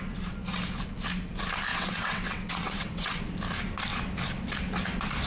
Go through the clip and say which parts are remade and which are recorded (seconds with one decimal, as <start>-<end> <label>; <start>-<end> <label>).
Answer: 0.0-1.7 recorded; 1.7-3.2 remade; 3.2-5.3 recorded